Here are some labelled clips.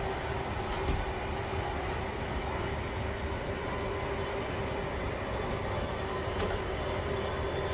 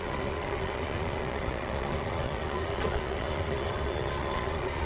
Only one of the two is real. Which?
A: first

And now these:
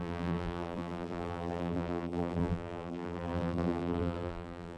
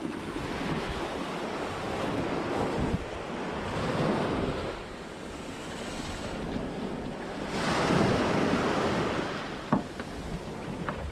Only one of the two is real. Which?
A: second